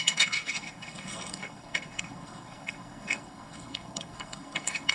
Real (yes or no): no